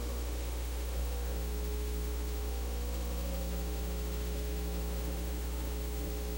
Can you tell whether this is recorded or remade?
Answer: remade